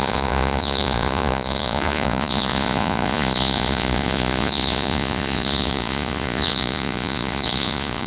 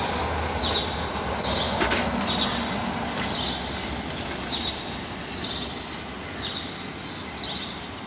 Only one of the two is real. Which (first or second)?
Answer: second